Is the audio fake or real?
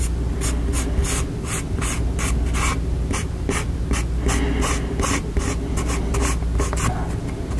real